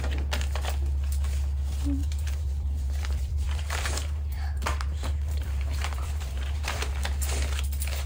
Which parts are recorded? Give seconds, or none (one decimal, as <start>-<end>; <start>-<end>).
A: 0.0-2.0; 6.9-8.1